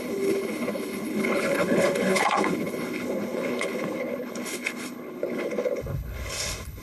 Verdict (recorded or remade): remade